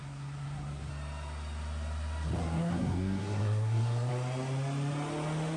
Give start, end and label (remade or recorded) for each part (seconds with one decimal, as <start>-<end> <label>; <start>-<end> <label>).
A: 0.0-0.9 remade; 0.9-2.4 recorded; 2.4-4.1 remade; 4.1-5.6 recorded